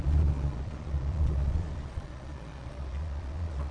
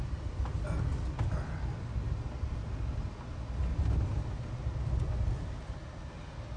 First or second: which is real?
second